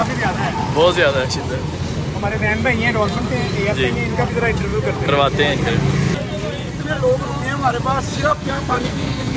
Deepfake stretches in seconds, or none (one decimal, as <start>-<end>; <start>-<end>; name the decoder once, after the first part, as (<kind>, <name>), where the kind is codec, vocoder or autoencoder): 8.3-9.4 (codec, SNAC)